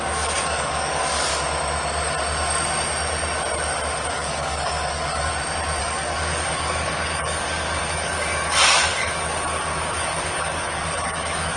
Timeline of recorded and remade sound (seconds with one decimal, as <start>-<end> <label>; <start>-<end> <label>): 0.0-1.3 remade; 1.3-4.1 recorded; 4.1-5.3 remade; 5.3-5.8 recorded; 5.8-11.6 remade